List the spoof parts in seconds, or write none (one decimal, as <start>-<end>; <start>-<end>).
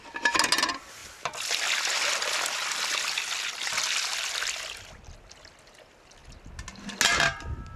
none